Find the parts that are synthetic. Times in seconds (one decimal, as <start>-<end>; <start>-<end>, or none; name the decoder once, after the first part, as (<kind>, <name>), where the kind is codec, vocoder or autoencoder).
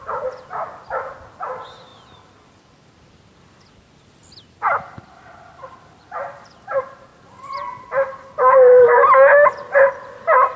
none